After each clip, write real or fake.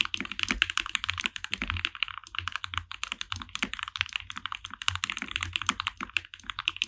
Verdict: real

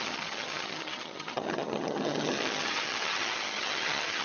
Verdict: fake